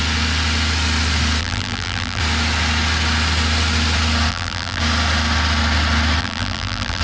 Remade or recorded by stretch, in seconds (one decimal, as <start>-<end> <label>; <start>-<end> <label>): 0.0-1.4 recorded; 1.4-2.2 remade; 2.2-4.3 recorded; 4.3-4.8 remade; 4.8-6.2 recorded; 6.2-7.0 remade